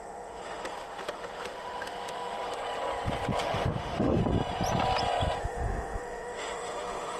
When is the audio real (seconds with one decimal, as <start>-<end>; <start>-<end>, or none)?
2.5-3.4; 4.2-5.4